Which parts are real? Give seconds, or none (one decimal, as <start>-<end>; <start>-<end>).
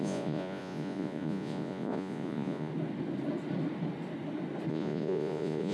2.7-4.7